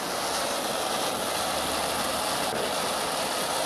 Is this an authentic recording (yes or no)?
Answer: yes